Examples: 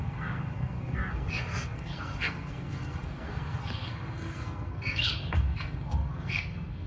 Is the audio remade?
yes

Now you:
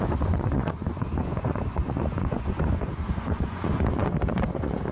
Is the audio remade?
yes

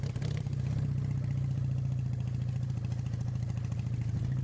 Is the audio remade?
no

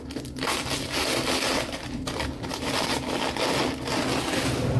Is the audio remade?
no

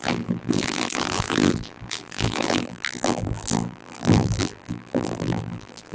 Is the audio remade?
yes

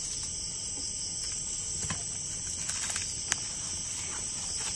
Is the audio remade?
no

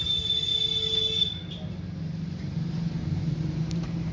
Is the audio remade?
no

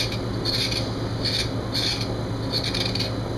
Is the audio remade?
no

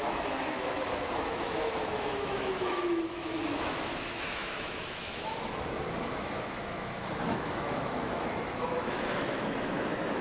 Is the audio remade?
yes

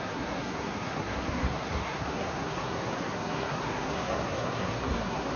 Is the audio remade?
yes